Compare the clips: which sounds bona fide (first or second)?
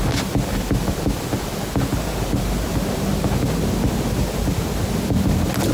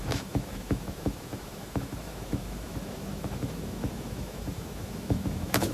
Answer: first